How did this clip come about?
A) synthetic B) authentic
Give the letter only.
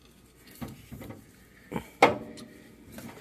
B